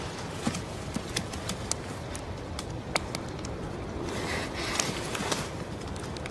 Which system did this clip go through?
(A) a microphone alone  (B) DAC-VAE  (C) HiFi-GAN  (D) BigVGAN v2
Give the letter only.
A